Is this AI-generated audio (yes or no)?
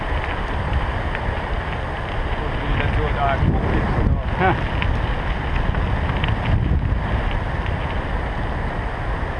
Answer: no